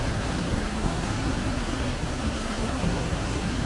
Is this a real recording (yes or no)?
no